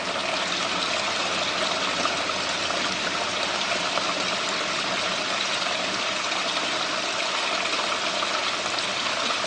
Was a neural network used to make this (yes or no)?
no